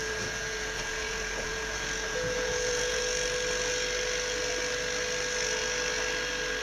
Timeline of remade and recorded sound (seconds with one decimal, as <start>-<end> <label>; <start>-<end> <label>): 0.0-3.0 remade; 3.0-6.6 recorded